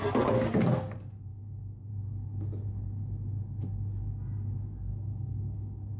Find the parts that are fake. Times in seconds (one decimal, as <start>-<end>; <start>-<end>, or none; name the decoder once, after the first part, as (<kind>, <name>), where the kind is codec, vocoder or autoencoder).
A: 1.3-1.9 (codec, DAC); 4.9-6.0